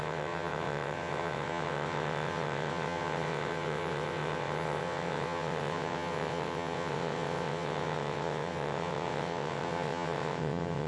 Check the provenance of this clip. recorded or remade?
remade